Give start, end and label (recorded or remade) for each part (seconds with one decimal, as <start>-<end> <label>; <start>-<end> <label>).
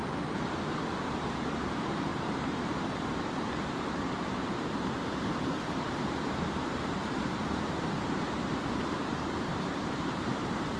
0.0-1.1 recorded; 1.1-10.8 remade